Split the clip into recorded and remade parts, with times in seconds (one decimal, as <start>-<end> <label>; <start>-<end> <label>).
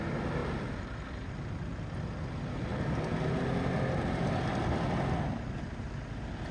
0.0-6.5 recorded